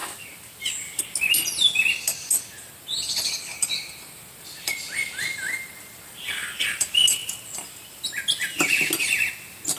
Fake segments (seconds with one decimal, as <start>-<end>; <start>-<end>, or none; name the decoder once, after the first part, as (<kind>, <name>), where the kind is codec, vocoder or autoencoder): none